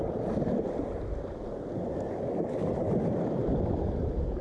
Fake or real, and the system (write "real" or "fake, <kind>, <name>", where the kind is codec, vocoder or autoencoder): real